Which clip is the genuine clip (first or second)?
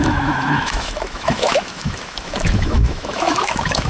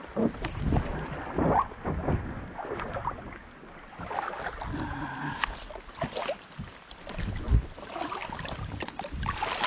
second